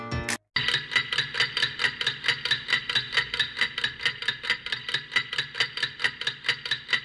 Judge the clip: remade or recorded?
recorded